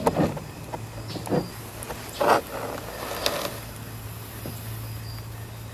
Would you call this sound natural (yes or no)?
yes